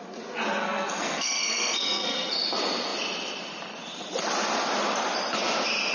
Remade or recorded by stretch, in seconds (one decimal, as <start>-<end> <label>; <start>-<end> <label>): 0.0-0.6 recorded; 0.6-2.3 remade; 2.3-5.9 recorded